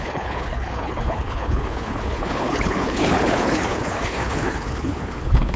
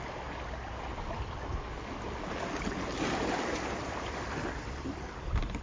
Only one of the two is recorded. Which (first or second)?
second